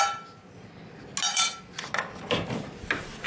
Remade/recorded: recorded